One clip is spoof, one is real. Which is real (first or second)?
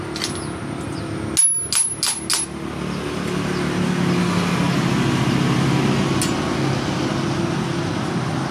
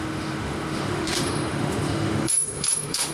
first